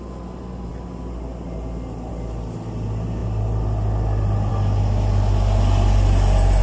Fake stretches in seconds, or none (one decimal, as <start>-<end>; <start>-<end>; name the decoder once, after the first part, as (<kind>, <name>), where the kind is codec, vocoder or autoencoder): none

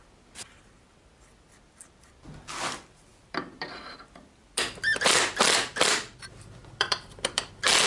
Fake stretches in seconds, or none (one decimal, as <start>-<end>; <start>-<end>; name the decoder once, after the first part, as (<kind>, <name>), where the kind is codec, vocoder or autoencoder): 3.1-7.5 (vocoder, BigVGAN v2)

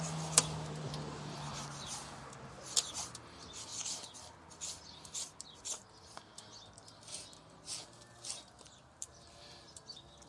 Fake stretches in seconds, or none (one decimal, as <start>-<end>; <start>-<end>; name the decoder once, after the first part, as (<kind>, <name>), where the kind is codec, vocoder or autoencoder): none

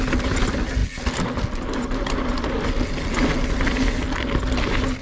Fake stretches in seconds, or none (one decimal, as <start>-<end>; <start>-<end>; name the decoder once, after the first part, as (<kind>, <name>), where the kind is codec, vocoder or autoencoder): none

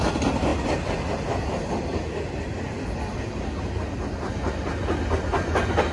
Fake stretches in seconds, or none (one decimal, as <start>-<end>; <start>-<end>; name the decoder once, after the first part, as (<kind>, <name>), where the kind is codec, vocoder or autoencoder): none

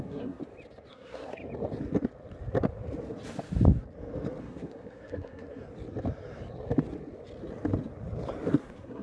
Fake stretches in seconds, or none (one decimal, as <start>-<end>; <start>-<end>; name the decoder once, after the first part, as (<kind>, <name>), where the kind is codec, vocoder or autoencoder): 0.0-0.4 (codec, SNAC); 0.9-1.4; 4.4-5.6; 8.6-9.0

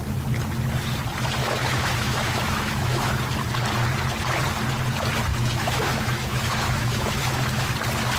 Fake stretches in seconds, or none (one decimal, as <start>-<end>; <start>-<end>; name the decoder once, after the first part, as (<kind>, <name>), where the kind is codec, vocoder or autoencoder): 1.4-3.1 (autoencoder, DAC-VAE); 5.3-7.7

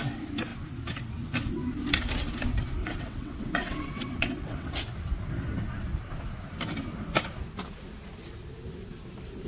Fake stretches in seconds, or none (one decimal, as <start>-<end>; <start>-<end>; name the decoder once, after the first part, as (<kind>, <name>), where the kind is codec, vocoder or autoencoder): 2.8-4.8 (vocoder, WaveNeXt)